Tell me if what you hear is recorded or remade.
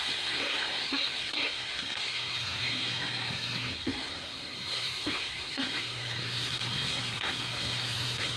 remade